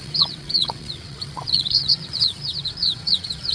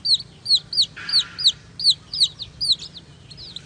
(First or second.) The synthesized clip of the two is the first